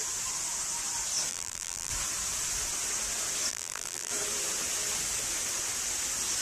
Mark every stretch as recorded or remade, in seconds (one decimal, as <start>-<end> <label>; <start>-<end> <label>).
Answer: 0.0-1.3 recorded; 1.3-1.9 remade; 1.9-3.5 recorded; 3.5-4.1 remade; 4.1-6.4 recorded